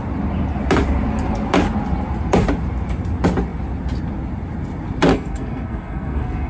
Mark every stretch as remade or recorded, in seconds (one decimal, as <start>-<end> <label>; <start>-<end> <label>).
0.0-5.1 recorded; 5.1-6.5 remade